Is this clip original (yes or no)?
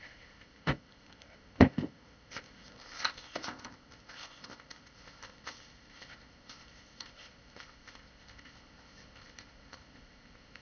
no